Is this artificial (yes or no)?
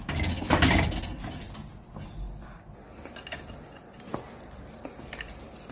no